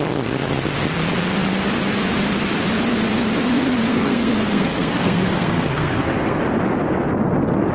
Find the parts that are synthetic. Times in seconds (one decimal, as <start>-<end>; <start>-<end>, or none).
3.9-6.4